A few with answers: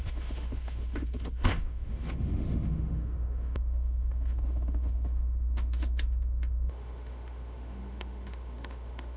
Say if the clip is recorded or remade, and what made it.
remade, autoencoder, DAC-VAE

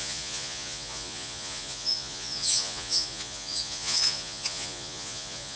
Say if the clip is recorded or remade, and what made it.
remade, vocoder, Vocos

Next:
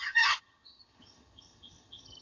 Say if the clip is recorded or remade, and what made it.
remade, vocoder, HiFi-GAN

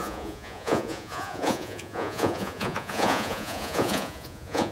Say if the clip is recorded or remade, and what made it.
remade, vocoder, Vocos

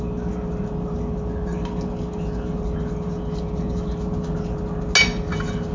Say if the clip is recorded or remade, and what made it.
recorded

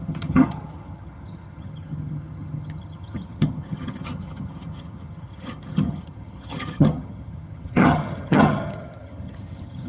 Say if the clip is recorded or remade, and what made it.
remade, vocoder, HiFi-GAN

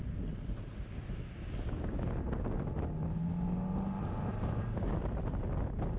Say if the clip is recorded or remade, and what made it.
recorded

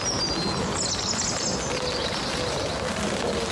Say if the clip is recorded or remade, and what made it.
recorded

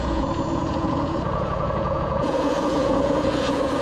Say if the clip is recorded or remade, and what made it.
remade, vocoder, Vocos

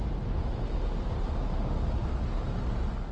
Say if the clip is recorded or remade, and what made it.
recorded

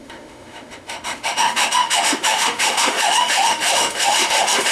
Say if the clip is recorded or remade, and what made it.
remade, autoencoder, DAC-VAE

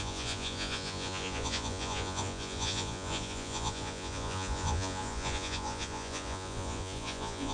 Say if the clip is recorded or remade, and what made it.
remade, vocoder, Vocos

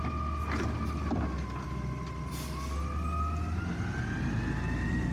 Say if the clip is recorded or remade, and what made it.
recorded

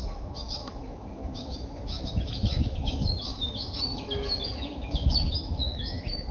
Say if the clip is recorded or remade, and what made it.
remade, autoencoder, DAC-VAE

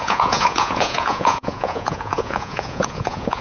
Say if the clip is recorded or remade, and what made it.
remade, vocoder, Vocos